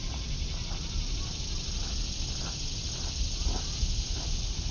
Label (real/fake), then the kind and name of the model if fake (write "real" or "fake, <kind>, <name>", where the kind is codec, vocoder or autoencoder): real